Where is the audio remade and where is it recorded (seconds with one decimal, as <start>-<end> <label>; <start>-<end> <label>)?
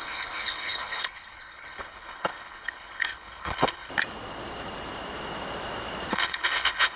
0.0-3.9 remade; 3.9-6.1 recorded; 6.1-7.0 remade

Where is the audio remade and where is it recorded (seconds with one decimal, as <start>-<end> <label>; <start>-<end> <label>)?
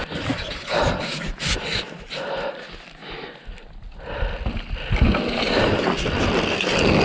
0.0-7.0 recorded